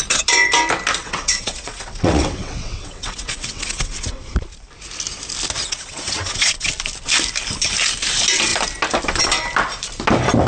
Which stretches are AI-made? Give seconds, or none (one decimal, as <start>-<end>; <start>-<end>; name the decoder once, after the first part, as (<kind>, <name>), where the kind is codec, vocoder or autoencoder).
1.0-4.3 (vocoder, WaveNeXt); 5.6-6.7